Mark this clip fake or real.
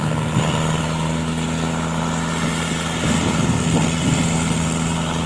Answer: real